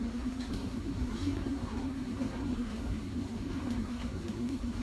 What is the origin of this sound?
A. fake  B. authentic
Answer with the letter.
A